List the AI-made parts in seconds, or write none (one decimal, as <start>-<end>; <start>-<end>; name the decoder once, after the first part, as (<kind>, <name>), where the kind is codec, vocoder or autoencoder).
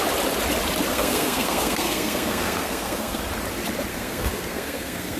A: 0.9-3.2 (codec, SNAC); 3.9-5.2